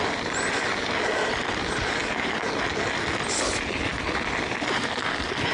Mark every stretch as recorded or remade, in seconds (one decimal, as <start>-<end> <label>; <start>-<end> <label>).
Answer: 0.0-3.9 recorded; 3.9-5.1 remade; 5.1-5.5 recorded